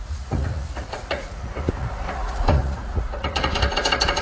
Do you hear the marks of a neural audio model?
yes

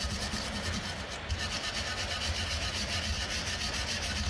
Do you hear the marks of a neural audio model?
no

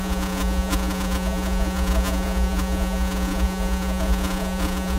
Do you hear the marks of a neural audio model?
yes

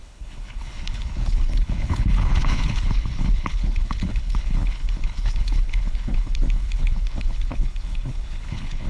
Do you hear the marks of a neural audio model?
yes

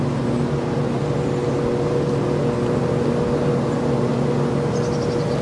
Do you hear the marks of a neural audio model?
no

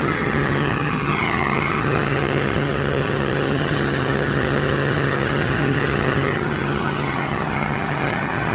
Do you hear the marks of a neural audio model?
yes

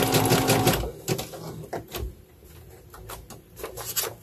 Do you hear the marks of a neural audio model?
no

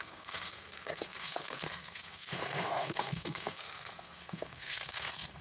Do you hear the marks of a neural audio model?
yes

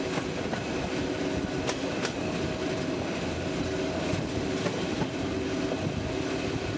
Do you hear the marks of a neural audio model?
no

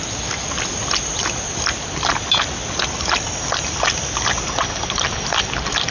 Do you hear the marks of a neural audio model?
yes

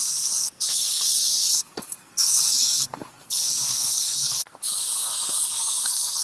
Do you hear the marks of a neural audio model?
yes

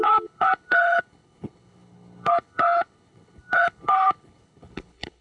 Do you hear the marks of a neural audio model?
yes